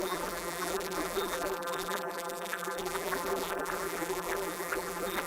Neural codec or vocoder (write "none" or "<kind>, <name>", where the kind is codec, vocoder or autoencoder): vocoder, BigVGAN v2